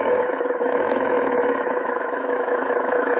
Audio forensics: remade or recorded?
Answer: remade